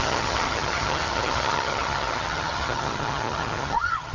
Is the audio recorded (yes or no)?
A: no